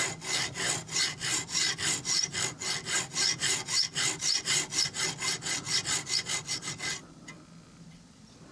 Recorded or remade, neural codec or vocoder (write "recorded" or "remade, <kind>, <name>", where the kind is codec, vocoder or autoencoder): recorded